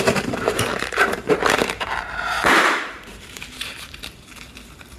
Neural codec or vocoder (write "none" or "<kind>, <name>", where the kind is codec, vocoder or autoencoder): vocoder, BigVGAN v2